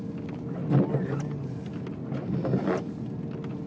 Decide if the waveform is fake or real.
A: real